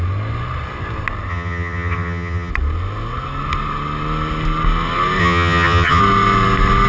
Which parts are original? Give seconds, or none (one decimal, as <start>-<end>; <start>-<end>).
0.0-1.3; 2.5-5.2; 6.0-6.9